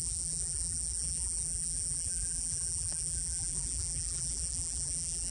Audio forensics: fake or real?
fake